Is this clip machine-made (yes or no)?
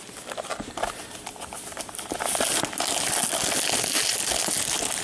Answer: no